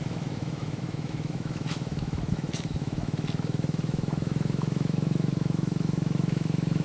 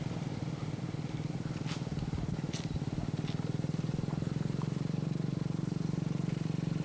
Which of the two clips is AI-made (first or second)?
first